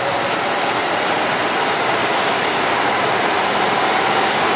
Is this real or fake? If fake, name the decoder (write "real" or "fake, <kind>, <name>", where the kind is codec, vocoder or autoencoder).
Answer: real